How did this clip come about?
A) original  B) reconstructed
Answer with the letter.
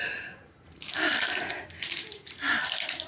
B